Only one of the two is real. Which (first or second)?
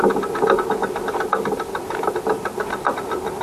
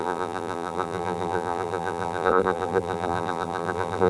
first